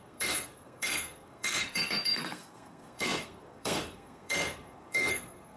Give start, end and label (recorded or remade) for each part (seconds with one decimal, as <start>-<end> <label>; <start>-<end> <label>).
0.0-5.6 remade